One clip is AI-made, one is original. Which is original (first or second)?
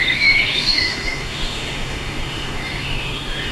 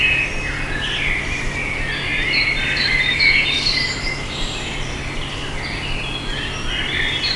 second